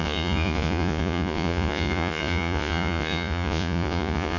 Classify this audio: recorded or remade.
remade